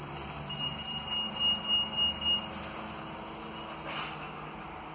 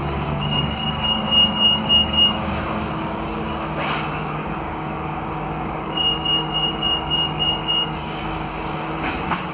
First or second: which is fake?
second